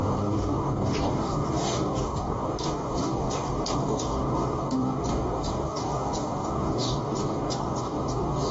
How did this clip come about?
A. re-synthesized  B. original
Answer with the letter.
A